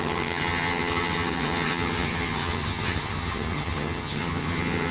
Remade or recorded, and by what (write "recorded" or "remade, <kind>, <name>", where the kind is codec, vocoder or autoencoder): remade, vocoder, HiFi-GAN